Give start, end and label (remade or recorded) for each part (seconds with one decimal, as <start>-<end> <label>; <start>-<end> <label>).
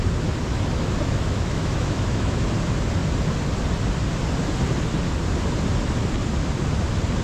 0.0-0.5 recorded; 0.5-2.3 remade; 2.3-7.2 recorded